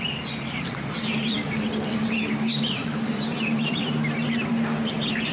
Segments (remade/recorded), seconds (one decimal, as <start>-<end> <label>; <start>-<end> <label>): 0.0-1.2 recorded; 1.2-3.9 remade; 3.9-5.3 recorded